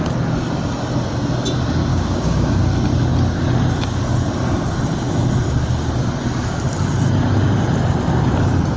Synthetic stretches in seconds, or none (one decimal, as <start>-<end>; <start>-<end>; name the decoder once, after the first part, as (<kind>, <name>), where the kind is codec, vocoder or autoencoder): 1.9-2.6 (codec, DAC)